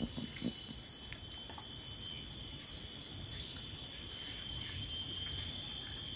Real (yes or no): yes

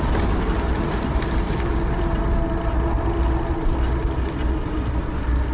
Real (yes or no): yes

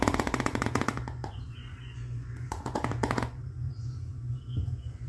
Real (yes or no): no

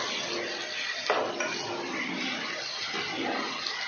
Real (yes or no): yes